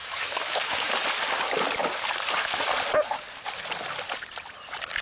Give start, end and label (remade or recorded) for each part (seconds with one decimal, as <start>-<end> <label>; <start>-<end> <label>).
0.0-0.9 remade; 0.9-5.0 recorded